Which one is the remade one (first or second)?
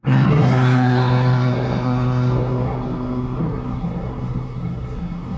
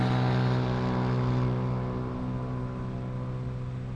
first